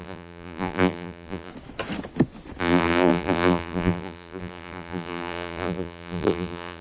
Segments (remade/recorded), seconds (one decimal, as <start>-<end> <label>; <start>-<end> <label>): 0.0-1.5 remade; 1.5-2.6 recorded; 2.6-6.8 remade